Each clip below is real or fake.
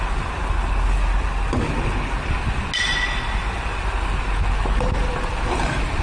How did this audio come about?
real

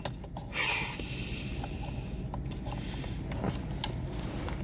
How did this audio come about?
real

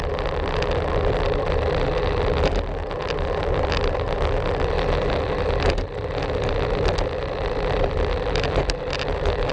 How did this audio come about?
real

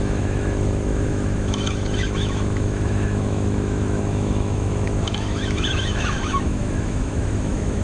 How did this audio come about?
fake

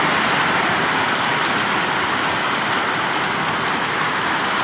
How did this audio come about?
real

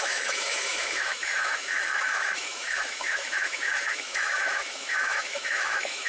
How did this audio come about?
fake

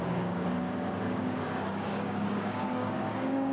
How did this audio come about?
fake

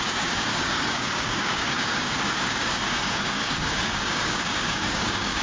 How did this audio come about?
fake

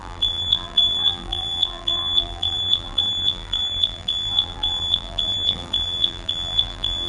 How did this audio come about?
fake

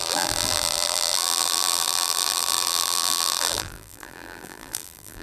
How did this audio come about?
fake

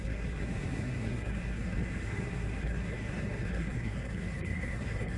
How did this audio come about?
fake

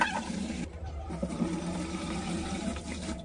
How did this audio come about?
fake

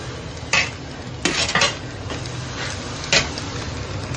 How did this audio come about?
real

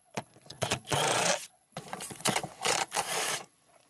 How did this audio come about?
fake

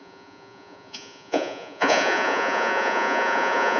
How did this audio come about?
fake